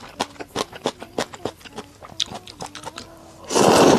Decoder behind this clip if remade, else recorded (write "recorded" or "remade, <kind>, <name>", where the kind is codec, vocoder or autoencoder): recorded